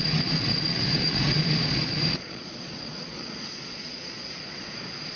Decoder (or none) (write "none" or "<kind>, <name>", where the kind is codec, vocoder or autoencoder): vocoder, Vocos